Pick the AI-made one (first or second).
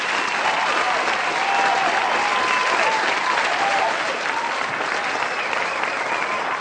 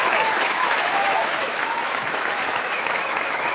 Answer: second